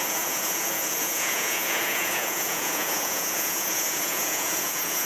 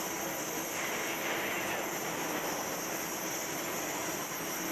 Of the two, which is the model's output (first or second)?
first